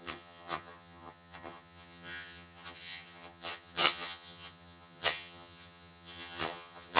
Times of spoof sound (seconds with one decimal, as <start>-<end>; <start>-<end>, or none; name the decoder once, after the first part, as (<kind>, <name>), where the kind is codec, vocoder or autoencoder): 0.0-7.0 (vocoder, HiFi-GAN)